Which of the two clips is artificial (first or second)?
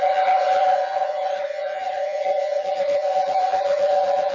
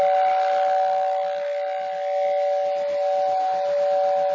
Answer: first